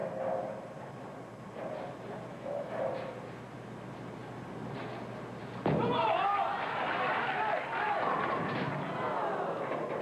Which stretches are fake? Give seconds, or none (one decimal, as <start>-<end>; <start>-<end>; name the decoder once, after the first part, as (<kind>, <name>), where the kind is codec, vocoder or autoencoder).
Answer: 2.3-2.9 (autoencoder, DAC-VAE)